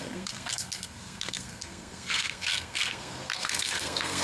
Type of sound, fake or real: fake